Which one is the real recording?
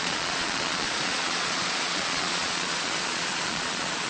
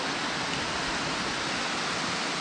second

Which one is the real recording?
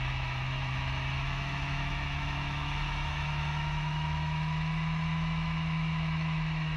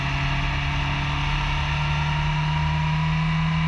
second